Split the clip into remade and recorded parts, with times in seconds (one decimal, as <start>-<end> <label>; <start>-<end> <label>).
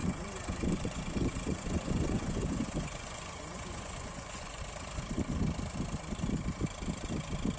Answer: 0.0-4.6 remade; 4.6-7.6 recorded